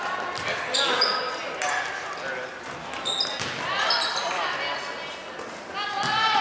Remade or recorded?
recorded